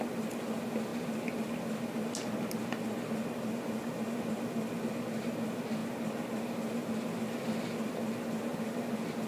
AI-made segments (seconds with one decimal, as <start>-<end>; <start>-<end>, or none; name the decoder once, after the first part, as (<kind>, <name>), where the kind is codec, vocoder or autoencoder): none